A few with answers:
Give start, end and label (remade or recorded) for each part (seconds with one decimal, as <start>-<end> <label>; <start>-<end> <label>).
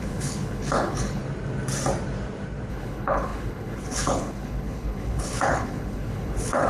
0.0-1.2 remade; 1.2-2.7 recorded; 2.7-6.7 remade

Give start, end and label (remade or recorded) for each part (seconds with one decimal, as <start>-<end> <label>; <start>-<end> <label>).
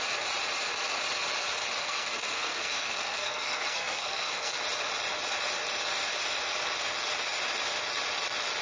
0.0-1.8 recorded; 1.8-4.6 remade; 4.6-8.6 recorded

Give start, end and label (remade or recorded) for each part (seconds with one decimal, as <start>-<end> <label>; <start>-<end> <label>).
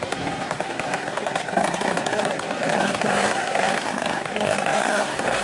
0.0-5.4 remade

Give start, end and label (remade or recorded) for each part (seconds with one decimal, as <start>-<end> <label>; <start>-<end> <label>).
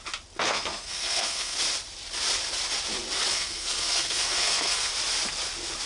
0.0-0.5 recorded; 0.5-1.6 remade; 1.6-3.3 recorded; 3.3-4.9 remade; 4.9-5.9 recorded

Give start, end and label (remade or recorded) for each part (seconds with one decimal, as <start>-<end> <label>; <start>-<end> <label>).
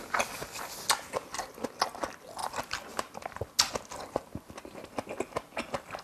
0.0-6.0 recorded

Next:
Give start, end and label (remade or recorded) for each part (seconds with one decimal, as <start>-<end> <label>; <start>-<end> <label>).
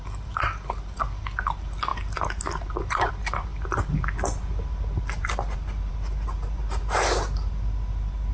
0.0-8.3 recorded